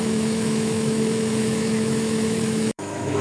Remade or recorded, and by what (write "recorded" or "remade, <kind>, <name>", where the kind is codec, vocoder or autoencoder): remade, autoencoder, DAC-VAE